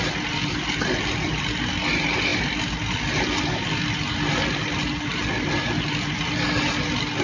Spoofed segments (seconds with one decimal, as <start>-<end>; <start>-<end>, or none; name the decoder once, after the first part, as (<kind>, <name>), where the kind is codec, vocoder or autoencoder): none